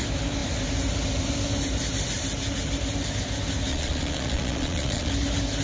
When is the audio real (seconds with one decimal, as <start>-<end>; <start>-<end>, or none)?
0.0-3.7; 5.1-5.6